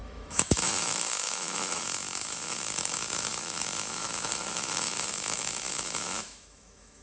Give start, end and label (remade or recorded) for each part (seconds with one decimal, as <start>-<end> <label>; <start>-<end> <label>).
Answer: 0.0-7.0 remade